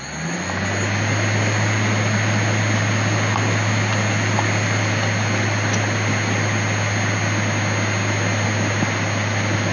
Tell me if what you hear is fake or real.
real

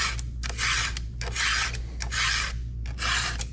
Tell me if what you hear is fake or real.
real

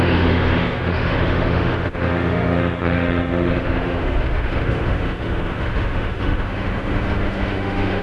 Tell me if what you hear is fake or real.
fake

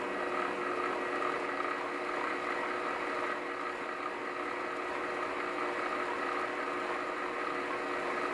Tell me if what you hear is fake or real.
real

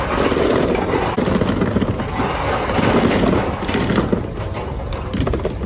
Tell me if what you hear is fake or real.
real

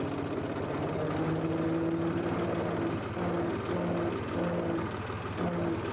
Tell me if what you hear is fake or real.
real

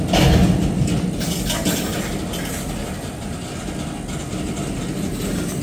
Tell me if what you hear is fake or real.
real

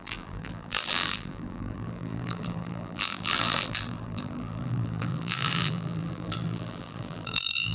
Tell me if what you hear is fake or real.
fake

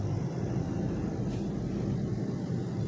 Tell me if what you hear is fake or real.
real